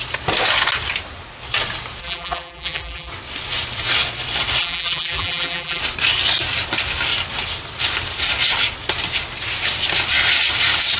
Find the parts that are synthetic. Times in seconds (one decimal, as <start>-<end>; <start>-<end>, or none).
2.0-3.1; 4.6-5.8